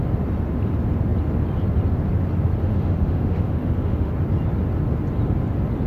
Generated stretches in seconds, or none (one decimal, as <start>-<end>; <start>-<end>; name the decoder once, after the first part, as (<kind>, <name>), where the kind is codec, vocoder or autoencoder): 2.6-4.1 (autoencoder, DAC-VAE)

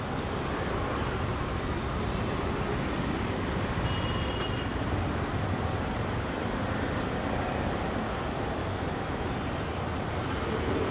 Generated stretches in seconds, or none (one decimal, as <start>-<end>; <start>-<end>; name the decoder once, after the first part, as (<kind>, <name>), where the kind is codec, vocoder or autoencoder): 8.6-9.3 (autoencoder, DAC-VAE)

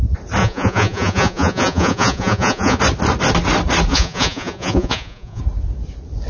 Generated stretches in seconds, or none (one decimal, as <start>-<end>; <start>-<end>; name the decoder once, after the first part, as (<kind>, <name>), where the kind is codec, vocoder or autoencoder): 0.4-2.8 (vocoder, Vocos); 3.9-5.4

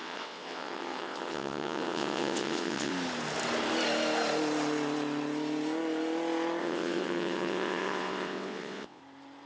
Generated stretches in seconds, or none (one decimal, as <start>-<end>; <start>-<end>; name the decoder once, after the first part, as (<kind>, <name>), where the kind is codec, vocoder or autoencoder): 0.0-2.9 (vocoder, WaveNeXt); 6.6-9.0

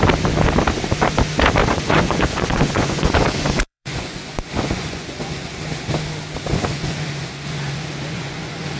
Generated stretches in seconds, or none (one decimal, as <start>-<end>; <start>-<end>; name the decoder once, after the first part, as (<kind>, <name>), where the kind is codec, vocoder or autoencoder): 1.6-5.6 (vocoder, Vocos); 6.5-8.8

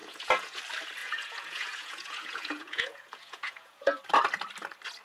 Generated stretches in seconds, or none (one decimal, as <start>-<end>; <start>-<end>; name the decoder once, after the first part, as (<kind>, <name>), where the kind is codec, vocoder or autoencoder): 0.0-0.6 (vocoder, Vocos); 1.0-4.0